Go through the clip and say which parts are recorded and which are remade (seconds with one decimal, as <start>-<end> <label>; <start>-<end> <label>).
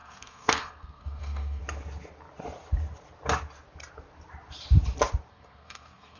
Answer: 0.0-1.6 remade; 1.6-5.3 recorded; 5.3-6.2 remade